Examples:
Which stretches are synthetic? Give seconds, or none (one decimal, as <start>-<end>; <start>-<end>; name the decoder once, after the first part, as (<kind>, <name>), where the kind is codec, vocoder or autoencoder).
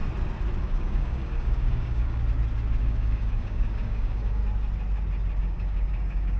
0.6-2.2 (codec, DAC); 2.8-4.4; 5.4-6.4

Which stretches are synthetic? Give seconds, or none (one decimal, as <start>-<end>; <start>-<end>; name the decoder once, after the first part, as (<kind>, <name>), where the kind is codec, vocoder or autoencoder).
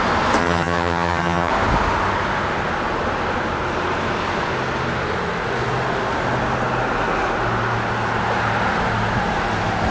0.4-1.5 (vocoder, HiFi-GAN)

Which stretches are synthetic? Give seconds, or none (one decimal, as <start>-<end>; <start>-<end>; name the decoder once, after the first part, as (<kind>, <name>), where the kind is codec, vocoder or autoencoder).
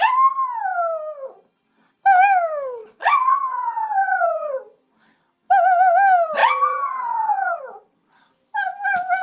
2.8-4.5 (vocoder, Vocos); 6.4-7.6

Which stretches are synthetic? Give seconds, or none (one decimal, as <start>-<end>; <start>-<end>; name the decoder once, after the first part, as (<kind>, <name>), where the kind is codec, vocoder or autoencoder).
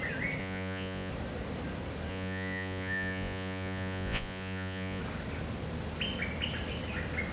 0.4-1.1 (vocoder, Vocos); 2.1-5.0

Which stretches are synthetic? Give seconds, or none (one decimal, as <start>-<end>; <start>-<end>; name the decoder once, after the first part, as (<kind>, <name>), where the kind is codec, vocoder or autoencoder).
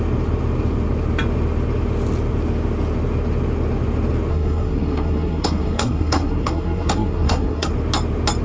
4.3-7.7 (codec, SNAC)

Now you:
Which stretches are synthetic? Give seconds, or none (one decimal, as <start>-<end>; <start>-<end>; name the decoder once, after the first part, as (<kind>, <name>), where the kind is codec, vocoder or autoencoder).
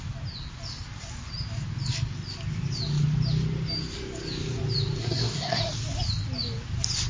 5.0-5.6 (codec, SNAC)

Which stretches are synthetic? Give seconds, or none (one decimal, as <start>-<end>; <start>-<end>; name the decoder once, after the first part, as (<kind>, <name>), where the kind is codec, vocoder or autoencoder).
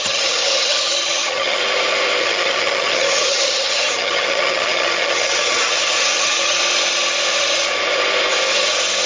0.0-1.6 (vocoder, HiFi-GAN); 2.2-6.6